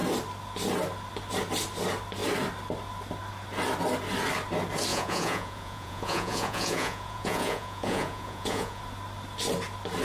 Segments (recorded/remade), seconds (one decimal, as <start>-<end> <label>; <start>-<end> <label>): 0.0-4.9 recorded; 4.9-8.8 remade; 8.8-10.0 recorded